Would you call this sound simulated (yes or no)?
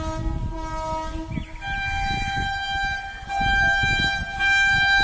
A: no